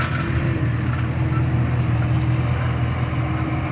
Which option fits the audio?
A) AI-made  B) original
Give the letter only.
B